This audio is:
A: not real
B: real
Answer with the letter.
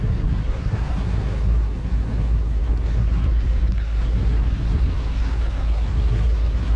A